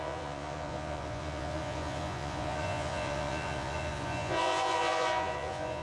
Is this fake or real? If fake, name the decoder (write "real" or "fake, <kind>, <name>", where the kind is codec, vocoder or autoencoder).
fake, vocoder, Vocos